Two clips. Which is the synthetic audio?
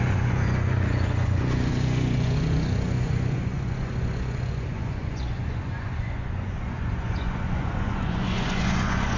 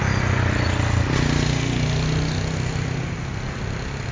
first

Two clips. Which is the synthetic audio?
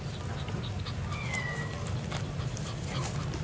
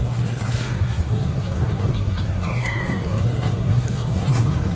second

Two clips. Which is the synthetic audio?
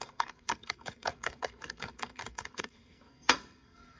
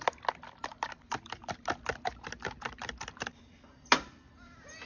first